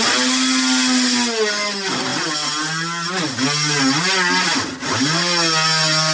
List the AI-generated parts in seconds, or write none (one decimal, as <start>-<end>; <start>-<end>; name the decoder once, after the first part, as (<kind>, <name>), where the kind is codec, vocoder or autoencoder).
none